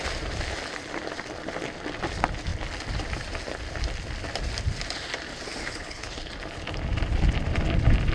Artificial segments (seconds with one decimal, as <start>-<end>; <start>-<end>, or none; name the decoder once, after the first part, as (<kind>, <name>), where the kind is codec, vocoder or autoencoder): 5.6-6.3 (codec, HILCodec)